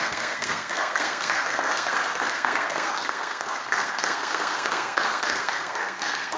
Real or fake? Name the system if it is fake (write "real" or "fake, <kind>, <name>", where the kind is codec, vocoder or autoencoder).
fake, codec, SNAC